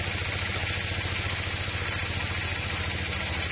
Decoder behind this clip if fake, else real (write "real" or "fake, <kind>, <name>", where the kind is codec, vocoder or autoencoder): real